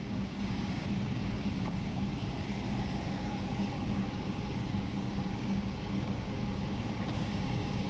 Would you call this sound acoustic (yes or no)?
no